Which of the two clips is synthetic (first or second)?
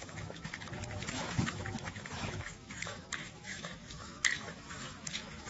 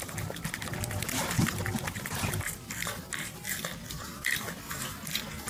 first